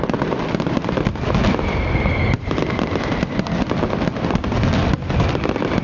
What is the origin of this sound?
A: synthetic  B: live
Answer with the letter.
B